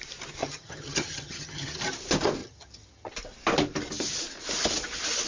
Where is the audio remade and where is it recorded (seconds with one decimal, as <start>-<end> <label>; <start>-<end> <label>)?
0.0-0.4 recorded; 0.4-1.8 remade; 1.8-2.4 recorded; 2.4-3.1 remade; 3.1-5.3 recorded